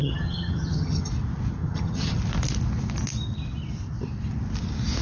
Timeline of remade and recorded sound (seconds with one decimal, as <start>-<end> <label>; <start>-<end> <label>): 0.0-1.1 remade; 1.1-1.6 recorded; 1.6-2.2 remade; 2.2-5.0 recorded